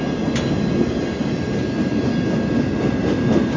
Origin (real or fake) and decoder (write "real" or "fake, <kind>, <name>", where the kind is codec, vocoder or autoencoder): real